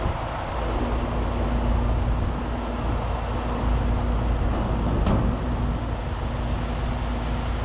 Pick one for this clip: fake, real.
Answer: real